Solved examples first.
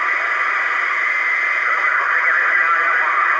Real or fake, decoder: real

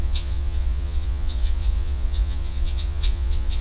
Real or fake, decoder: fake, vocoder, Vocos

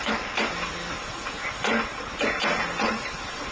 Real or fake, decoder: real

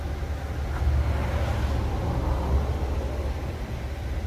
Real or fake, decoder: real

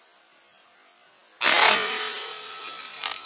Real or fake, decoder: real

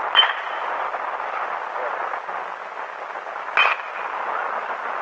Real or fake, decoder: real